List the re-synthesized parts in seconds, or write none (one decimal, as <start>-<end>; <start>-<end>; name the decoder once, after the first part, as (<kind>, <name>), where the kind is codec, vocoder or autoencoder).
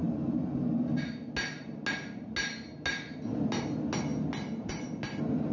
none